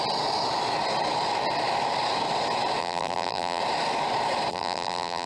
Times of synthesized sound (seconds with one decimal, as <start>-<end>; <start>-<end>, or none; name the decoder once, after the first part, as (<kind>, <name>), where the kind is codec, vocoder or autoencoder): 2.8-3.6 (vocoder, BigVGAN v2); 4.5-5.3